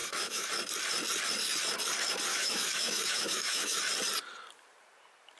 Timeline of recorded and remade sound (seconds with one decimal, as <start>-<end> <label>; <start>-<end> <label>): 0.0-0.5 remade; 0.5-2.3 recorded; 2.3-3.8 remade; 3.8-5.4 recorded